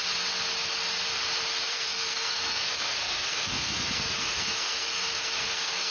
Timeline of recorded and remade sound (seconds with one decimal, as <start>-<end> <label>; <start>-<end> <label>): 0.0-1.7 recorded; 1.7-5.9 remade